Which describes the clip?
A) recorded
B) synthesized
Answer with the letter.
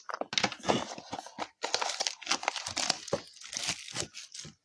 A